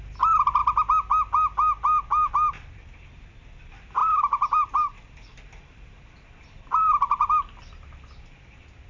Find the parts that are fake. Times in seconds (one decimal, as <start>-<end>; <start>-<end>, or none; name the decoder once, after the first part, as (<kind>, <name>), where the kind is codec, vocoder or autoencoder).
4.0-7.3 (vocoder, BigVGAN v2)